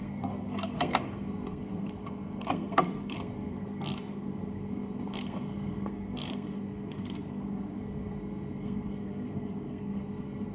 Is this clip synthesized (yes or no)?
yes